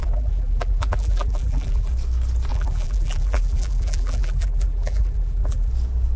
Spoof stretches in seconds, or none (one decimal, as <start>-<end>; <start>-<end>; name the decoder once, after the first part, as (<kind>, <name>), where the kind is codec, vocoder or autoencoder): 0.0-1.9 (vocoder, BigVGAN v2); 2.5-5.7